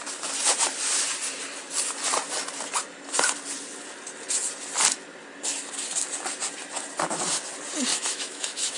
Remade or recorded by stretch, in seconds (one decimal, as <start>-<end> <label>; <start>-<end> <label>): 0.0-7.9 recorded; 7.9-8.8 remade